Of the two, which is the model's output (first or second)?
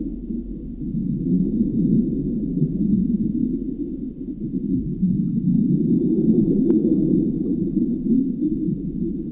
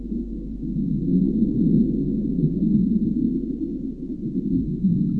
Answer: first